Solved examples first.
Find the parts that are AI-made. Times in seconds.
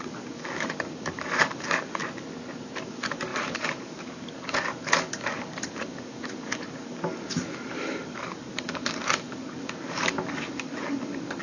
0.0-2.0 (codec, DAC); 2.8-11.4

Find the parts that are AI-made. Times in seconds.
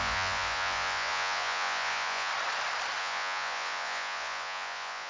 0.0-2.3 (vocoder, Vocos); 3.0-5.1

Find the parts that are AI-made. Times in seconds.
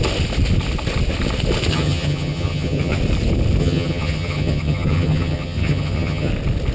1.7-3.0 (vocoder, HiFi-GAN); 3.6-6.3